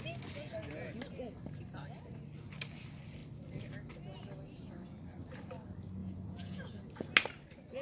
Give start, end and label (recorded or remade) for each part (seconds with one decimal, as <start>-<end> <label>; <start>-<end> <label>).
0.0-6.0 recorded; 6.0-6.8 remade; 6.8-7.8 recorded